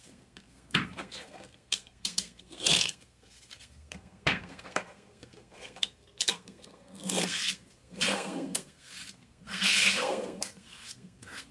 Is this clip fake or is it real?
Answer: fake